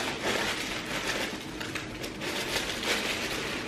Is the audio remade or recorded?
recorded